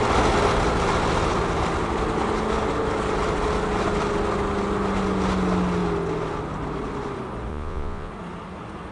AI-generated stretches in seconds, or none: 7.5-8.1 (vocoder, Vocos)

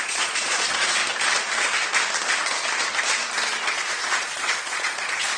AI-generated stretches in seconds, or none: 0.0-1.0 (vocoder, Vocos); 3.7-5.4

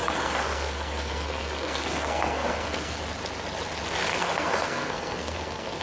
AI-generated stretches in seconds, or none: 0.0-3.0 (codec, SNAC); 4.1-5.8

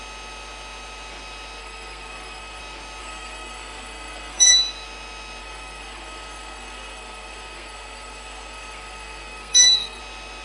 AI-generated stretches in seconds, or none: 1.6-2.6 (codec, SNAC); 3.0-4.6; 5.4-10.0

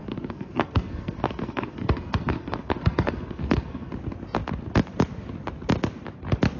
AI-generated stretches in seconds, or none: 0.0-3.9 (codec, SNAC)

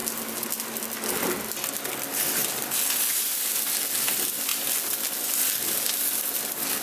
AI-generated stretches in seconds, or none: 2.4-3.5 (vocoder, BigVGAN v2)

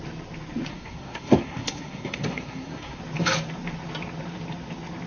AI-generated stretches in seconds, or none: 0.7-3.0 (codec, SNAC)

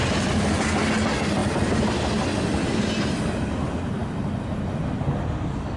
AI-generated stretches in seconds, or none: none